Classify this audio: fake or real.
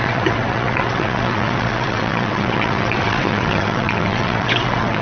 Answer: fake